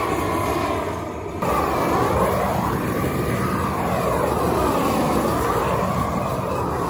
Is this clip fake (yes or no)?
no